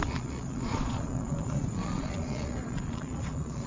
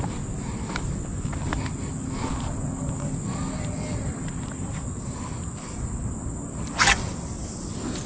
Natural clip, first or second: second